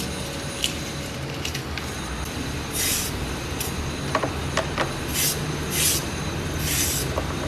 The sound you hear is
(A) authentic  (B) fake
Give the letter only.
A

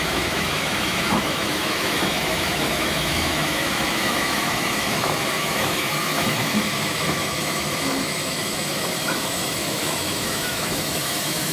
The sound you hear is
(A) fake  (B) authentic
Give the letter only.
A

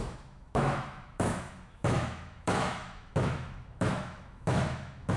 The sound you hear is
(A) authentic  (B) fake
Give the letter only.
B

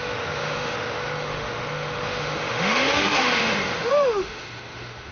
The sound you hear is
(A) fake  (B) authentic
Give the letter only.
A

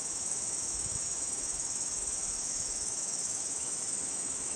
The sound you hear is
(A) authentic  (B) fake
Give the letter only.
B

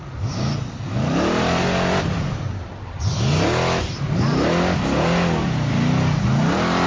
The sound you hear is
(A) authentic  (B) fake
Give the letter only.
A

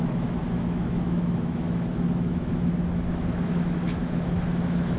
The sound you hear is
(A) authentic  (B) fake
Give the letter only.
B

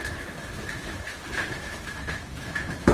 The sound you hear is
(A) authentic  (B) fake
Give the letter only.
B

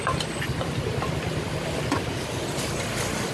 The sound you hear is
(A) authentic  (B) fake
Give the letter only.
A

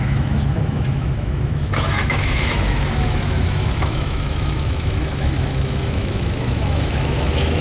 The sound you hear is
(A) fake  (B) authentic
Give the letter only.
A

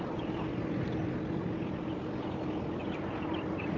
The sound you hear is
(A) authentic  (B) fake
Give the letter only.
A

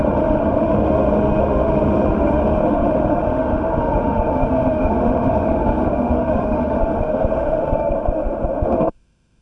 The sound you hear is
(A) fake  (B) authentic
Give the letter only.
A